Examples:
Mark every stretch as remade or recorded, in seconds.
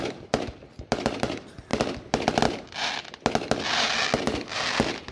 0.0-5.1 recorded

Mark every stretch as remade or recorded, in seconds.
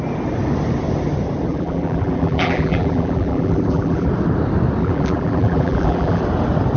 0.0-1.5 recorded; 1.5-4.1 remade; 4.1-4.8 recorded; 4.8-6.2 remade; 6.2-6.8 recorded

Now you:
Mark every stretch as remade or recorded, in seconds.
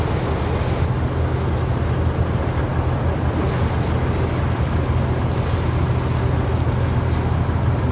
0.0-7.9 recorded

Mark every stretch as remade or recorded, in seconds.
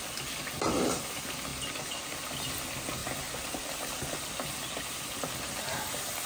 0.0-6.3 recorded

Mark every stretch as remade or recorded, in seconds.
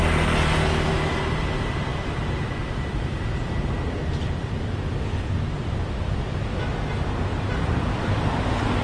0.0-7.3 recorded; 7.3-8.8 remade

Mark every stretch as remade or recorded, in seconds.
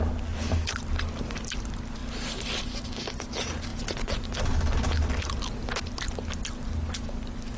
0.0-7.6 recorded